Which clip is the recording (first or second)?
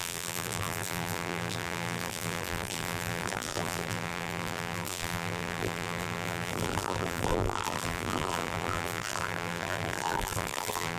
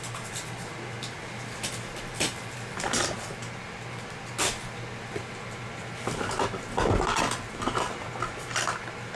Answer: second